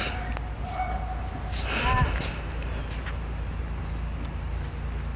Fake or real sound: real